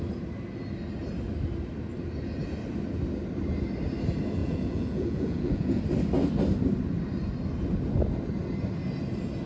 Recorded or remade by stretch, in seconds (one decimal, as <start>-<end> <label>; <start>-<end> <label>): 0.0-4.4 recorded; 4.4-5.8 remade; 5.8-9.5 recorded